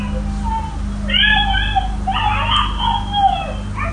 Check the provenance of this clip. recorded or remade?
recorded